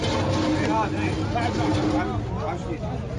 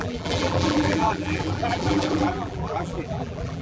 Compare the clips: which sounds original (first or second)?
first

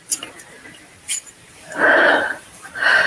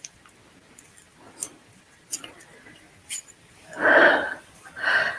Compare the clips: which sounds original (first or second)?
second